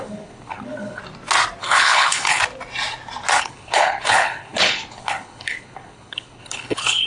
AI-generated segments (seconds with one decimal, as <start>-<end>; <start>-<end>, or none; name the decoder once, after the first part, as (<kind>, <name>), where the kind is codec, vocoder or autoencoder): 0.0-1.0 (codec, HILCodec); 1.6-2.4; 3.4-7.1